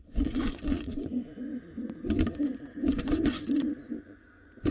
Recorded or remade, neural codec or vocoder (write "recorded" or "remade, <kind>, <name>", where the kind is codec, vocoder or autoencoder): remade, vocoder, Vocos